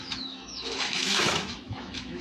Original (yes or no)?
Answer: no